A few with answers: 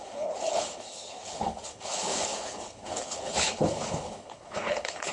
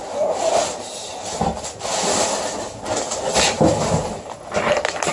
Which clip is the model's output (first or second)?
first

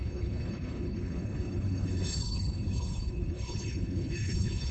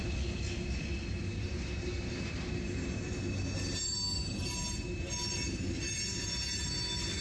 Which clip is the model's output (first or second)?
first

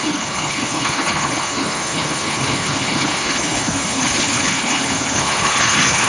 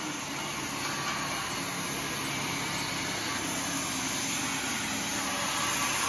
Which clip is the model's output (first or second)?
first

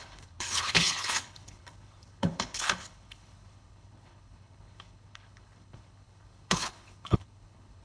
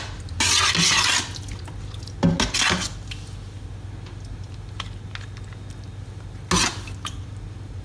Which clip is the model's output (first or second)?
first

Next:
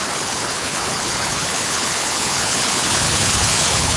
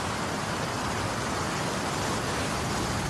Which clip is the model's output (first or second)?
first